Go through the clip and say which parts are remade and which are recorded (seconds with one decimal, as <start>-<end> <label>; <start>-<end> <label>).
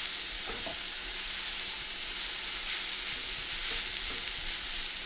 0.0-5.1 recorded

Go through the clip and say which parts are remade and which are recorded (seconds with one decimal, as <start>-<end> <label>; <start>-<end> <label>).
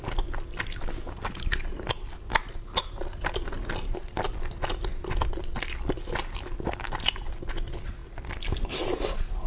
0.0-9.5 recorded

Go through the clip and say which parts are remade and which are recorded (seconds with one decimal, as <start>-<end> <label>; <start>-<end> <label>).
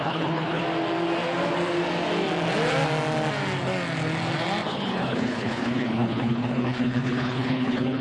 0.0-0.6 remade; 0.6-4.7 recorded; 4.7-8.0 remade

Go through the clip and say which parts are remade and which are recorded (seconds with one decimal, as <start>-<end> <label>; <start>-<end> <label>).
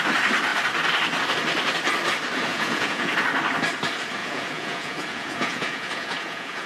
0.0-2.5 recorded; 2.5-3.1 remade; 3.1-4.2 recorded; 4.2-6.7 remade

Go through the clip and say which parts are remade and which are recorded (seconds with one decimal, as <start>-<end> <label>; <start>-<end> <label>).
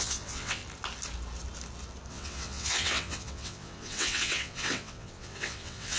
0.0-0.6 remade; 0.6-2.1 recorded; 2.1-6.0 remade